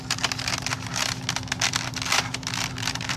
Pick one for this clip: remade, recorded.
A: recorded